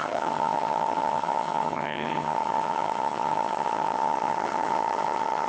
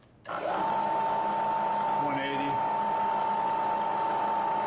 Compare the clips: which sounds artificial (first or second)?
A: first